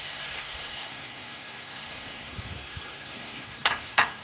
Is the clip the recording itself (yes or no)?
no